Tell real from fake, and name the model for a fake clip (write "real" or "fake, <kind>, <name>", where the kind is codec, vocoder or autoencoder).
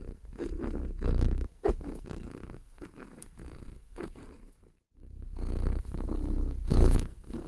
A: fake, codec, SNAC